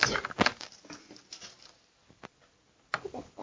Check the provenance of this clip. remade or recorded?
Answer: recorded